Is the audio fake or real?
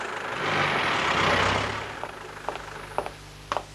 real